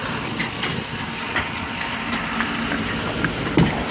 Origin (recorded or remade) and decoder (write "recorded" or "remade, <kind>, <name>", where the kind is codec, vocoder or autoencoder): recorded